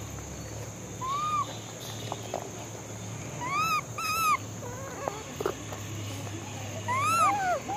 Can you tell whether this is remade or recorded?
recorded